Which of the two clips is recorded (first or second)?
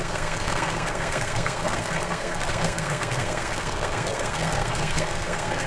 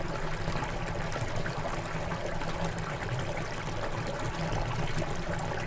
second